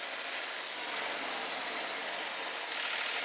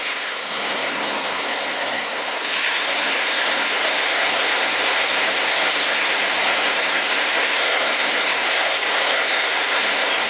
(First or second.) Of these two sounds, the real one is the first